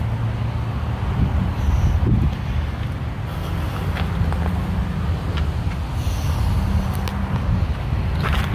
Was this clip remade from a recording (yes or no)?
no